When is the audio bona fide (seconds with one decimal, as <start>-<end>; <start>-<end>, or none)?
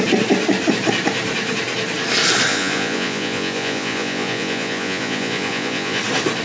0.0-2.5; 6.0-6.4